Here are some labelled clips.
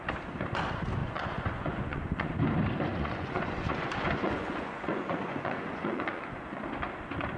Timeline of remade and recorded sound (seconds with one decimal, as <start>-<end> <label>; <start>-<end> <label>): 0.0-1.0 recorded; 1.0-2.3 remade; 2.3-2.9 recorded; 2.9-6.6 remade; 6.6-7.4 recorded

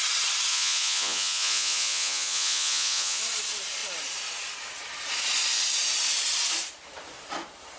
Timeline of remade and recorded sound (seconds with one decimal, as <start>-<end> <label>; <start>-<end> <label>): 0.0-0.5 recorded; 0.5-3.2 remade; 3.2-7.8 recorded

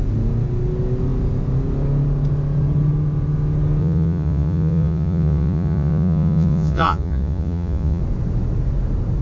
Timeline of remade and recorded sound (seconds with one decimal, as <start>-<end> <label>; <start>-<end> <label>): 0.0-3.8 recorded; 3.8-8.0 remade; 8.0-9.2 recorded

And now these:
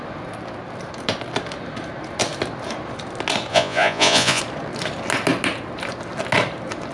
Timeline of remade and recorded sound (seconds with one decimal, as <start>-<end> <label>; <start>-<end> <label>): 0.0-3.5 recorded; 3.5-4.4 remade; 4.4-6.9 recorded